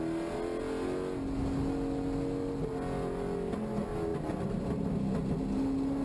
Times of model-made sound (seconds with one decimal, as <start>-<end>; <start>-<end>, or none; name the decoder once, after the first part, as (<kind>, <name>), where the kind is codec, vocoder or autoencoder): none